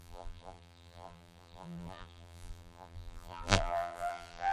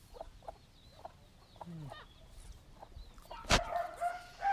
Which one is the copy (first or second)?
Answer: first